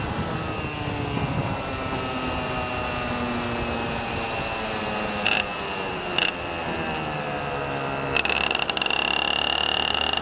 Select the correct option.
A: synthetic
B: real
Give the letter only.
B